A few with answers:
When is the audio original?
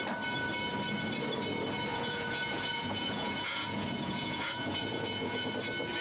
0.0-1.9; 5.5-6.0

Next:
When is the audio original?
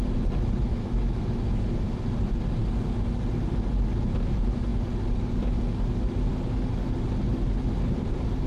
0.0-0.7; 1.9-8.5